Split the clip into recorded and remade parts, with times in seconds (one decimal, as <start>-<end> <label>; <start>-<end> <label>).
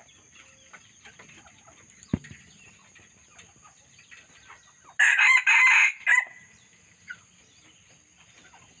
0.0-8.8 recorded